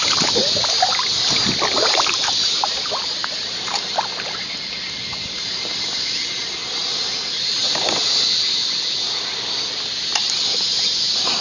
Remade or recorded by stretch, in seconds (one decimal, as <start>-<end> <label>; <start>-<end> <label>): 0.0-11.4 recorded

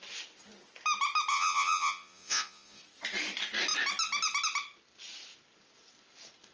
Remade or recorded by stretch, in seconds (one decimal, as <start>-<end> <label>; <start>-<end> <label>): 0.0-1.3 recorded; 1.3-2.8 remade; 2.8-6.5 recorded

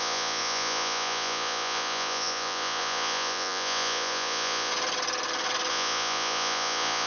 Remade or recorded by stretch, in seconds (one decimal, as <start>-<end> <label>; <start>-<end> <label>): 0.0-4.7 remade; 4.7-5.7 recorded; 5.7-7.1 remade

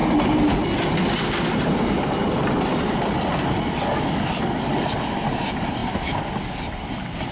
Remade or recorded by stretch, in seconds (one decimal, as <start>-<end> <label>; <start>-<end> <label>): 0.0-7.3 recorded

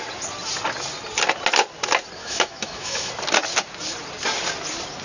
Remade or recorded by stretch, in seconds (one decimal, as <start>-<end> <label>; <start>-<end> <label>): 0.0-2.2 recorded; 2.2-3.1 remade; 3.1-5.0 recorded

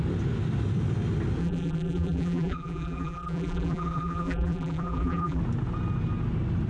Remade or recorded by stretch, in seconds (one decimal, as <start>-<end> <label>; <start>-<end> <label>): 0.0-1.4 recorded; 1.4-5.4 remade; 5.4-6.7 recorded

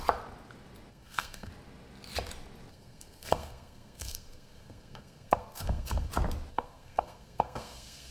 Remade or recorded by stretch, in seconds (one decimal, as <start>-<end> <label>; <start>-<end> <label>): 0.0-0.9 recorded; 0.9-1.5 remade; 1.5-2.7 recorded; 2.7-6.1 remade; 6.1-6.5 recorded; 6.5-8.1 remade